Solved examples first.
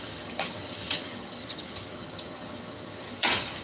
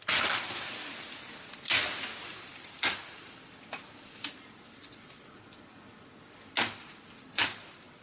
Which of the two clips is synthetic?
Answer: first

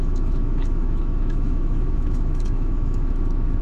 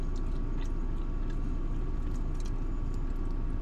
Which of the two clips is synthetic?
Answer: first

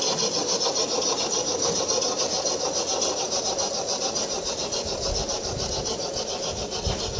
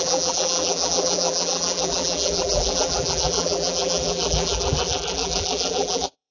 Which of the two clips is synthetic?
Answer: second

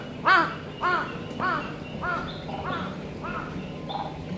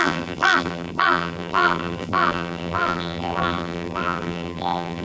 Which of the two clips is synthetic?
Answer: second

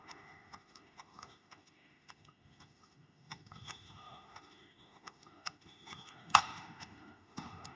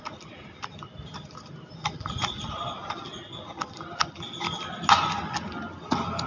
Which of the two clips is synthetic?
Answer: first